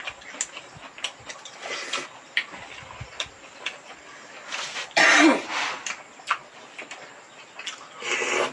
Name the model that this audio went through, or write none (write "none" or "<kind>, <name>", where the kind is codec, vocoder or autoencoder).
none